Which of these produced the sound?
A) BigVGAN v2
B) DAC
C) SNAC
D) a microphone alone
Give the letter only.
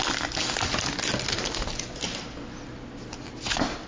D